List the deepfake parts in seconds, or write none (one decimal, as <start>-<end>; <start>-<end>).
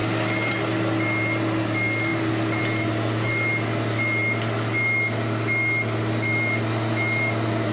none